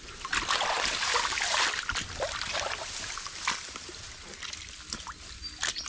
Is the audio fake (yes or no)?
no